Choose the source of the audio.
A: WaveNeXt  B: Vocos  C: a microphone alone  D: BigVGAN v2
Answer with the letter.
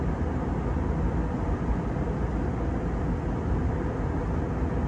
C